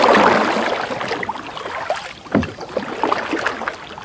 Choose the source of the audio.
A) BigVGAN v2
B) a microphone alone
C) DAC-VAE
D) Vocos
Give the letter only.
B